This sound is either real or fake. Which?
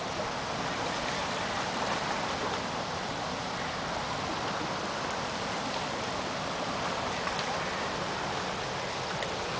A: real